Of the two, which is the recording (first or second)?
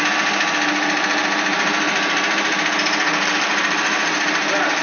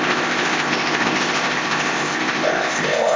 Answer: first